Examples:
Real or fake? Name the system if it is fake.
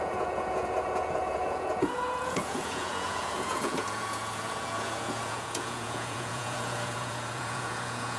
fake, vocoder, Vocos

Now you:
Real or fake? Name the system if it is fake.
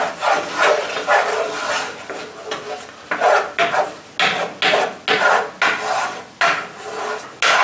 real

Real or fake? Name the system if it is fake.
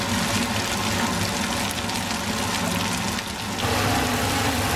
real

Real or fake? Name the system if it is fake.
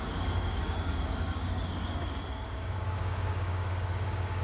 fake, codec, DAC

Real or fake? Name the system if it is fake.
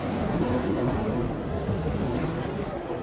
fake, codec, SNAC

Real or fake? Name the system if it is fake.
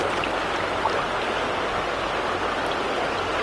real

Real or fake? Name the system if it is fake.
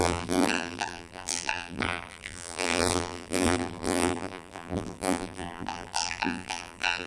fake, vocoder, BigVGAN v2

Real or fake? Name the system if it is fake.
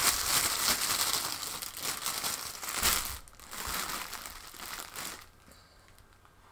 real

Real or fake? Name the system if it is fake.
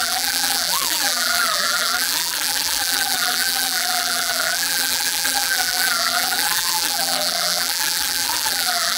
fake, vocoder, BigVGAN v2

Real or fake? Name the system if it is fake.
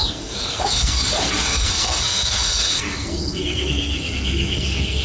fake, codec, SNAC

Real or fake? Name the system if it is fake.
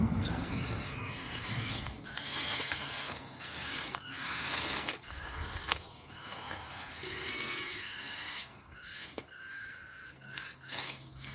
fake, codec, SNAC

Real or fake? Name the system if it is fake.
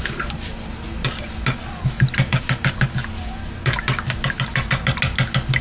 real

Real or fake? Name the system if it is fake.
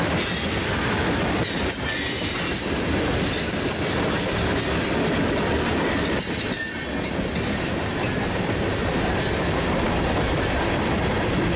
real